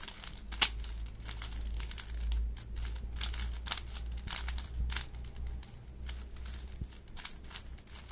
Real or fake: real